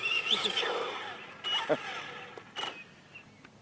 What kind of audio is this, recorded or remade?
recorded